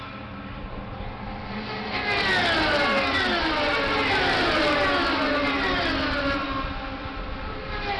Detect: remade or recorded recorded